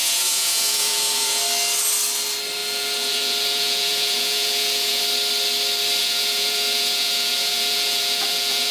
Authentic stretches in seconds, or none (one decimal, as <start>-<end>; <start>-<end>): 1.4-2.6; 5.0-6.0